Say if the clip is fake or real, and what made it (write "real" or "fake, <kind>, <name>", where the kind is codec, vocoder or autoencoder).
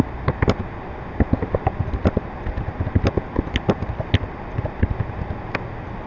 real